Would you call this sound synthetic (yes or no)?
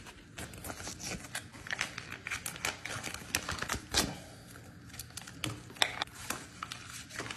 no